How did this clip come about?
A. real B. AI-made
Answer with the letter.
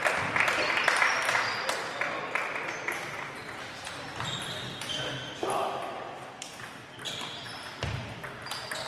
A